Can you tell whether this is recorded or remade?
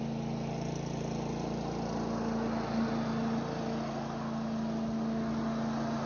recorded